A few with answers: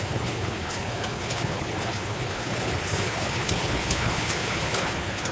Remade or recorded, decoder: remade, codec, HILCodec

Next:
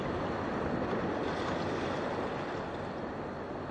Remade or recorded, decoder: recorded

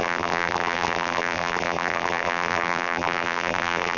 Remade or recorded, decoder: remade, vocoder, BigVGAN v2